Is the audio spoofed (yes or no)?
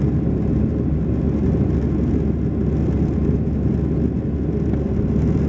no